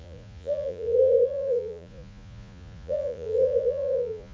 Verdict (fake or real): fake